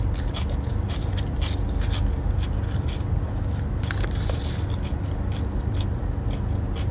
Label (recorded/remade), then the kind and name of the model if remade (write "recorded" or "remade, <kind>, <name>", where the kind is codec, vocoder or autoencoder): recorded